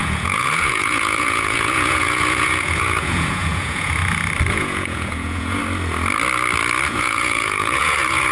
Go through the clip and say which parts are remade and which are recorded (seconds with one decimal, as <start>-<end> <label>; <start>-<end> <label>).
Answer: 0.0-4.0 remade; 4.0-4.5 recorded; 4.5-5.6 remade; 5.6-6.9 recorded; 6.9-8.3 remade